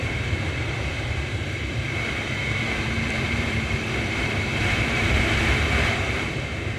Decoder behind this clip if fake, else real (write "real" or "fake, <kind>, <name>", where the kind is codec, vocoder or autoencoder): fake, vocoder, BigVGAN v2